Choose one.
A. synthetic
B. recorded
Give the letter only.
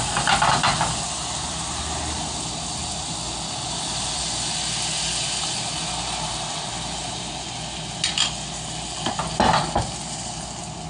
B